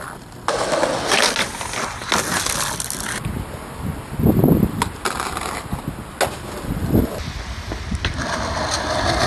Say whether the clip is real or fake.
real